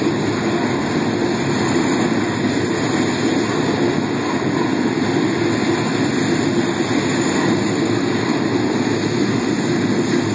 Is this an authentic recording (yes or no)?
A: yes